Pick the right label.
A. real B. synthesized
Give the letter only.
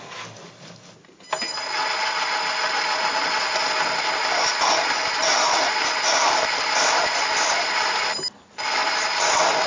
A